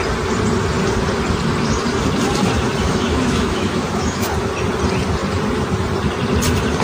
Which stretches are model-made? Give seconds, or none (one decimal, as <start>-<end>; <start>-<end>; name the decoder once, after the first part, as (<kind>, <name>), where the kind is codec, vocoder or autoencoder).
2.9-4.3 (autoencoder, DAC-VAE)